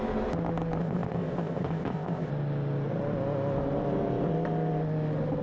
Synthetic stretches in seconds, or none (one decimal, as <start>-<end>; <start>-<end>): 0.8-2.3